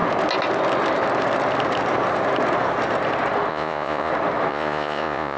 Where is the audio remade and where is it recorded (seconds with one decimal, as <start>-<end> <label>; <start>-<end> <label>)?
0.0-3.5 recorded; 3.5-4.1 remade; 4.1-4.5 recorded; 4.5-5.4 remade